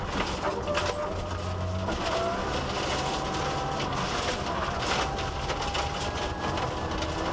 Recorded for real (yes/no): yes